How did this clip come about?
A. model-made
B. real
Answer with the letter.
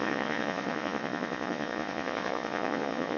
A